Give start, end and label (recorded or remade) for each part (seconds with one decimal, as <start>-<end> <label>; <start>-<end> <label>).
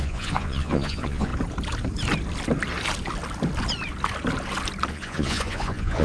0.0-1.3 remade; 1.3-4.9 recorded; 4.9-6.0 remade